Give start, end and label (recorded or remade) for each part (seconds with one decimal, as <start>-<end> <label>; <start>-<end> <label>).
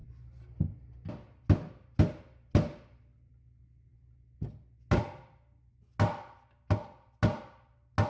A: 0.0-8.1 recorded